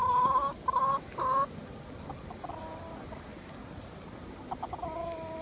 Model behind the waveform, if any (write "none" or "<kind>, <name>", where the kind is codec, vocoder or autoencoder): none